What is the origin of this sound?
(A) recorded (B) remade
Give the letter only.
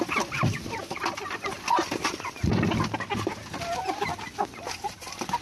A